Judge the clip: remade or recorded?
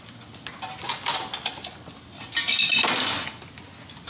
recorded